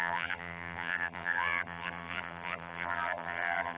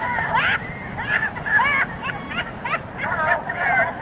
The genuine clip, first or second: second